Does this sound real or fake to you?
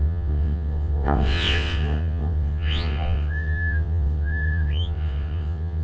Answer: fake